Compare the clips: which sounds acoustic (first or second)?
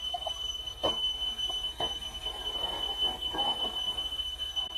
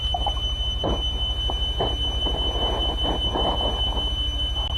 second